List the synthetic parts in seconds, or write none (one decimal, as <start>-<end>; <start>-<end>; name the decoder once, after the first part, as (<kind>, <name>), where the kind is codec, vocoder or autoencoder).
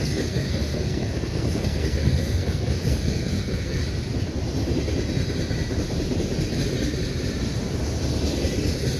0.0-3.8 (codec, SNAC)